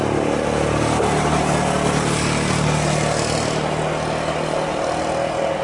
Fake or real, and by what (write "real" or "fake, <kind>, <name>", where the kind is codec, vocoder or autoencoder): real